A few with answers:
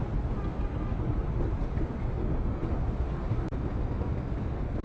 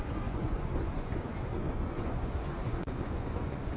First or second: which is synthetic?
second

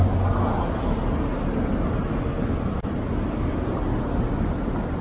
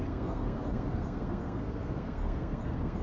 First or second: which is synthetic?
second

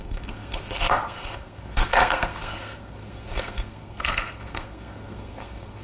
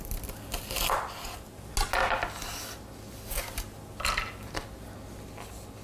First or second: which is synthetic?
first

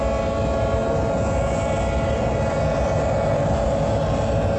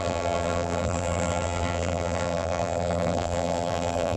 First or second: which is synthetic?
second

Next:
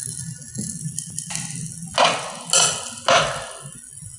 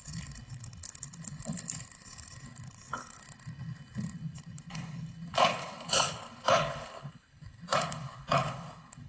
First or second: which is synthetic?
second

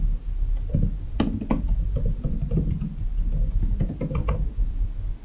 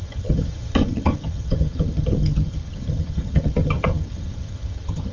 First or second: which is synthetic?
second